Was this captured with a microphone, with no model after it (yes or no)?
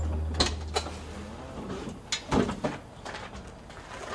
yes